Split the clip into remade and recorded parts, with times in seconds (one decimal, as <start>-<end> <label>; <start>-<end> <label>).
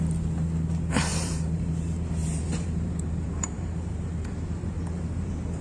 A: 0.0-1.1 recorded; 1.1-1.7 remade; 1.7-2.2 recorded; 2.2-5.6 remade